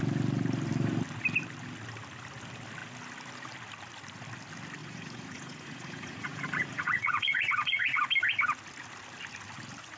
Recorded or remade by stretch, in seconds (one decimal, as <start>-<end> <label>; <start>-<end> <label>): 0.0-4.8 recorded; 4.8-8.0 remade; 8.0-10.0 recorded